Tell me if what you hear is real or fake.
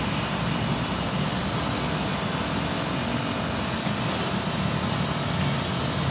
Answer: real